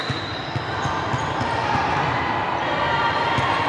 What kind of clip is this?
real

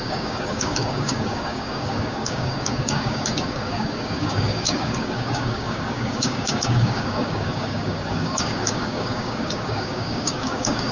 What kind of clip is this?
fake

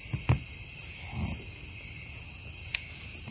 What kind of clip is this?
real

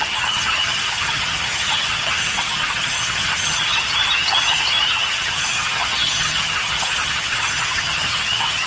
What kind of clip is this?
fake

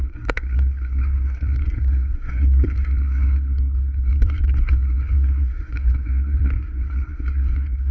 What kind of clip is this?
fake